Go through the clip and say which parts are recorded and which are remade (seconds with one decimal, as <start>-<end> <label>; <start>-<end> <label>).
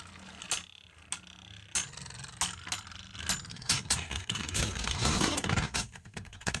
0.0-3.5 recorded; 3.5-6.6 remade